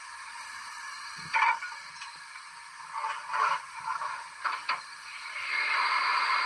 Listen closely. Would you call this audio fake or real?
real